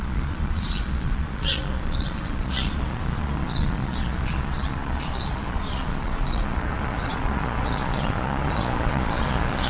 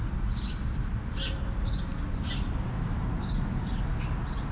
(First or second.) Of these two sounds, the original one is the second